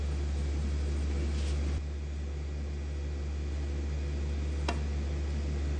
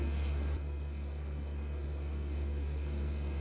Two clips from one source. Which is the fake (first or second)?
second